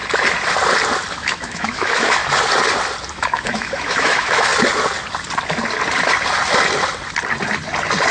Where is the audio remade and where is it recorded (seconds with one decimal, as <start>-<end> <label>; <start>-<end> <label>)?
0.0-1.1 recorded; 1.1-2.2 remade; 2.2-3.1 recorded; 3.1-4.5 remade; 4.5-8.1 recorded

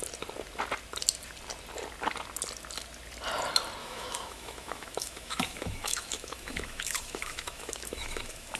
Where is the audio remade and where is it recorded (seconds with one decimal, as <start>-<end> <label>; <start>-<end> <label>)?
0.0-3.8 recorded; 3.8-8.6 remade

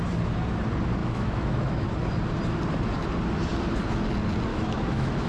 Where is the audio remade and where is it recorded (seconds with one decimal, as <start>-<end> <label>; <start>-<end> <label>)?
0.0-1.0 recorded; 1.0-1.9 remade; 1.9-4.5 recorded; 4.5-5.3 remade

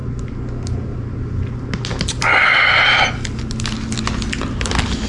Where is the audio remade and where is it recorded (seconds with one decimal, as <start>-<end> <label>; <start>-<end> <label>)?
0.0-5.1 recorded

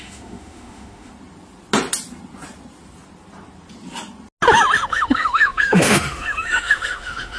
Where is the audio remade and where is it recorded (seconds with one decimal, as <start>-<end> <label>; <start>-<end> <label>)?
0.0-1.1 remade; 1.1-4.9 recorded; 4.9-7.4 remade